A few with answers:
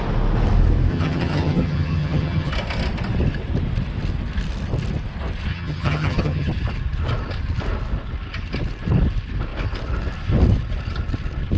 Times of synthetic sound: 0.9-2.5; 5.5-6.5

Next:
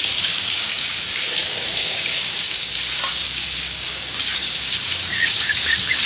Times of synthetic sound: 0.0-6.1

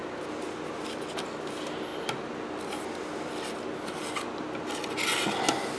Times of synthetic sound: none

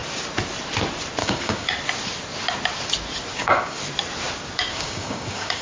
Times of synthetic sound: 1.2-1.7; 3.3-3.8; 4.7-5.6